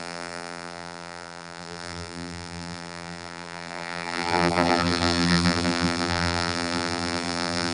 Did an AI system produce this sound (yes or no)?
yes